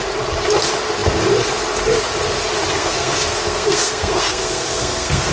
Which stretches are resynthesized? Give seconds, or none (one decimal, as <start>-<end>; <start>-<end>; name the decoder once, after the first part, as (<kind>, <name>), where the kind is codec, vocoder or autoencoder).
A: 2.7-5.3 (codec, SNAC)